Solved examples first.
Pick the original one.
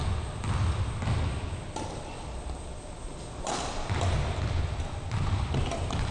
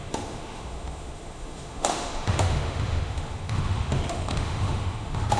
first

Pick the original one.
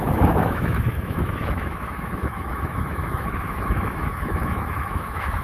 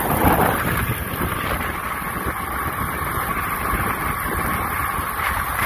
second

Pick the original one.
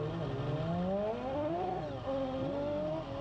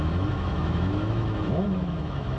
first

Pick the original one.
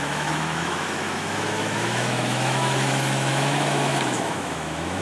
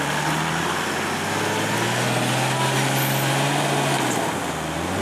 second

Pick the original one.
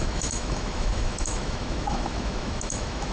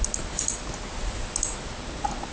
second